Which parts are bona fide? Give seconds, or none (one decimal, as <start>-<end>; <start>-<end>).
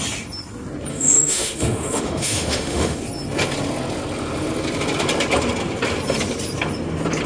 0.0-0.9; 3.0-7.3